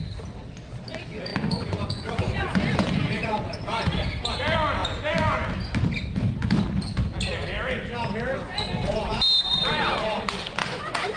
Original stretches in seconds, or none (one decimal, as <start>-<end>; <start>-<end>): 0.0-1.3; 4.0-10.6